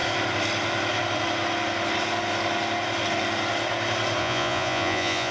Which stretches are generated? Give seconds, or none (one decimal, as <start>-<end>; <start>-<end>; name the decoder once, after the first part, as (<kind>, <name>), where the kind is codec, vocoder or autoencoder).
4.2-5.3 (vocoder, Vocos)